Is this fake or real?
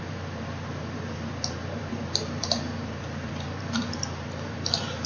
fake